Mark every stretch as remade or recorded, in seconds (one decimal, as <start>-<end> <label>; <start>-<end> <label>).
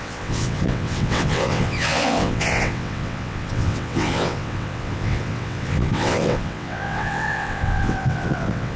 0.0-8.8 remade